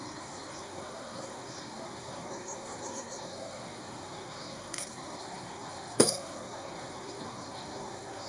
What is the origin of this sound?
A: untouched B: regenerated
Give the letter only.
B